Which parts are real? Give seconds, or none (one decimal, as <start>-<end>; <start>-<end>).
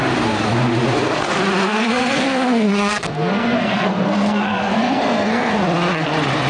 0.0-1.6; 5.5-6.5